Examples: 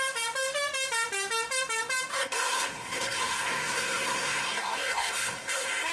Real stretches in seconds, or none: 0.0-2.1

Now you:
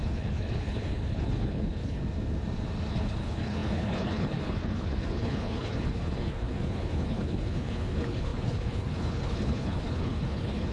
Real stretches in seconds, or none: 2.0-2.9